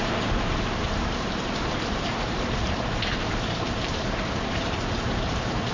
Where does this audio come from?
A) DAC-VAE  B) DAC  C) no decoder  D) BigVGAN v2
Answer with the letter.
D